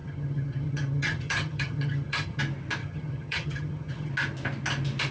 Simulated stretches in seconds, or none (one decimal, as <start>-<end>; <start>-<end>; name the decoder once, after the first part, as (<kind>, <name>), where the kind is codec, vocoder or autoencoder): 0.0-2.4 (vocoder, HiFi-GAN); 2.8-4.1